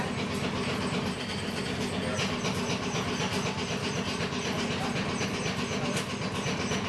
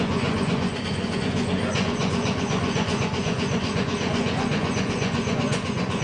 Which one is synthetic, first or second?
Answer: second